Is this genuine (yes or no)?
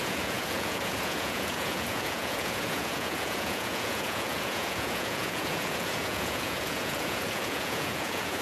no